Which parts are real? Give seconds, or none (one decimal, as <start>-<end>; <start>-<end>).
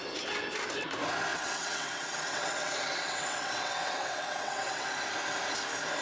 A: 0.0-1.3; 4.9-6.0